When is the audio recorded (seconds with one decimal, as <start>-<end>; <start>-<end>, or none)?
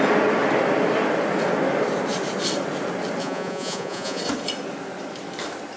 0.0-3.2; 4.2-5.8